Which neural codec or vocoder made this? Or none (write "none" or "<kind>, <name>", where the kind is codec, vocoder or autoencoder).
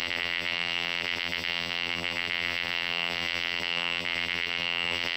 vocoder, BigVGAN v2